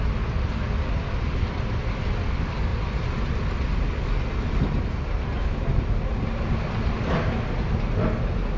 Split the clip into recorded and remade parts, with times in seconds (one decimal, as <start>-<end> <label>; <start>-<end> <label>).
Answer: 0.0-8.6 recorded